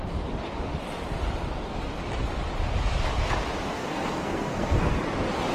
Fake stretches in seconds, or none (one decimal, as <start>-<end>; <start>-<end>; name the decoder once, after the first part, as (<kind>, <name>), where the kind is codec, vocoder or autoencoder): 3.8-5.0 (codec, SNAC)